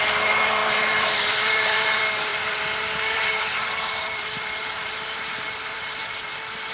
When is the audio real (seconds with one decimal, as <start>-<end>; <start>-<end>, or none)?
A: none